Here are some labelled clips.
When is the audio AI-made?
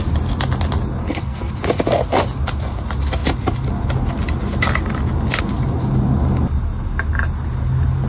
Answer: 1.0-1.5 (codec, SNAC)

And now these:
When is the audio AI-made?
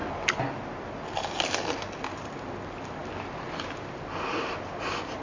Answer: none